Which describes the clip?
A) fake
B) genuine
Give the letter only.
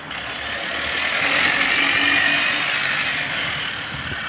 B